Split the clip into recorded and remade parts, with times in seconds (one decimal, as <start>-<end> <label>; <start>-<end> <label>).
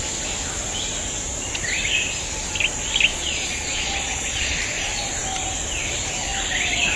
0.0-3.1 recorded; 3.1-4.6 remade; 4.6-7.0 recorded